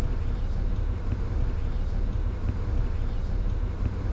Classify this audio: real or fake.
fake